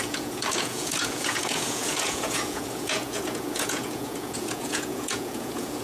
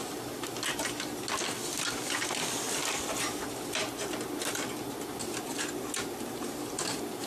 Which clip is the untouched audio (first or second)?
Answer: second